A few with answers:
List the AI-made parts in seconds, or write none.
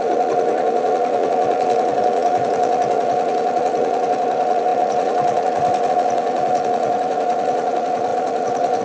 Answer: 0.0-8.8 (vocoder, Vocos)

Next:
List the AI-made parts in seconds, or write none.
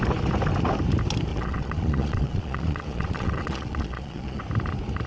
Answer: 1.3-4.4 (vocoder, Vocos)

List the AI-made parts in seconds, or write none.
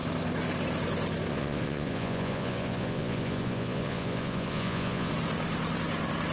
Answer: 1.3-5.1 (vocoder, Vocos)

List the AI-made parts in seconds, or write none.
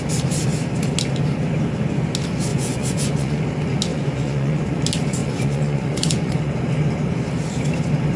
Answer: 2.5-3.4 (vocoder, Vocos); 3.9-4.8; 5.2-6.5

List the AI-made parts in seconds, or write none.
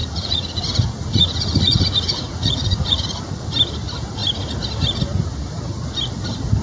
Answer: 0.0-0.6 (vocoder, Vocos); 1.0-3.5